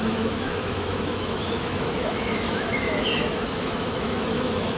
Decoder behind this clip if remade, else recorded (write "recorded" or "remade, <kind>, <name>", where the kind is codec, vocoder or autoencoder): remade, autoencoder, DAC-VAE